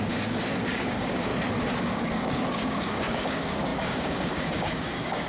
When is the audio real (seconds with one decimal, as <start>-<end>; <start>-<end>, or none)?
1.3-1.8